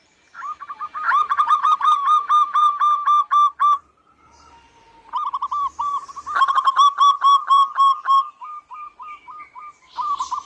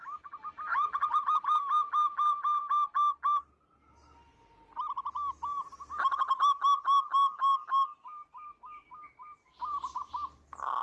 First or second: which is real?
second